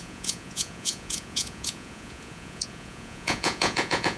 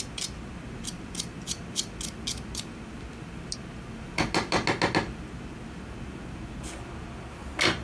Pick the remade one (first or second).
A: first